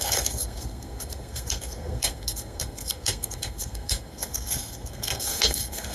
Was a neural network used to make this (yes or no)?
yes